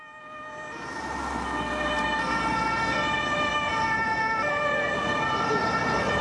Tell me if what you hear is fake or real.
real